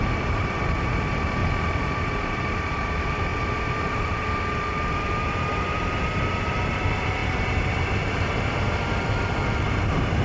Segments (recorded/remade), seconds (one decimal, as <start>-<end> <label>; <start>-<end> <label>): 0.0-1.4 remade; 1.4-1.9 recorded; 1.9-10.2 remade